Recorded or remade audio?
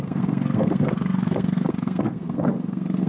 remade